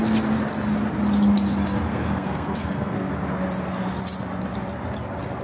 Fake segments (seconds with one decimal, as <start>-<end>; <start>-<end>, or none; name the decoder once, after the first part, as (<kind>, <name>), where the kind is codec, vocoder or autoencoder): 1.9-3.1 (codec, SNAC)